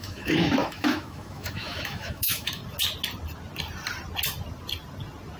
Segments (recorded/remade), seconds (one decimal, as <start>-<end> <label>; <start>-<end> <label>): 0.0-2.6 remade; 2.6-5.4 recorded